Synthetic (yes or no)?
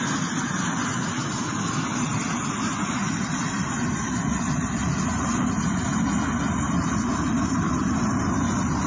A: no